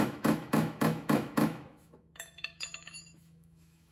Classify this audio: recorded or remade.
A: remade